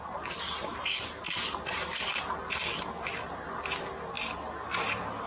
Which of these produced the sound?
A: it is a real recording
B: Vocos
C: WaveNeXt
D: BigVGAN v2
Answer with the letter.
A